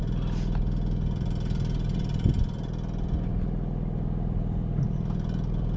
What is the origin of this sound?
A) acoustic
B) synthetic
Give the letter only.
A